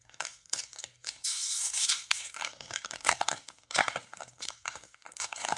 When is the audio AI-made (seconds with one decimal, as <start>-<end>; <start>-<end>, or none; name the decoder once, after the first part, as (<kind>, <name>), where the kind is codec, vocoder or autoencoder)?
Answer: 0.0-5.6 (codec, SNAC)